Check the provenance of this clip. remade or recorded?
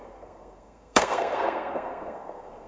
remade